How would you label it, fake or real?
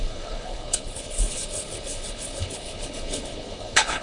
fake